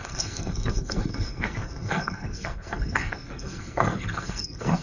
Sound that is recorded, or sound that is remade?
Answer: remade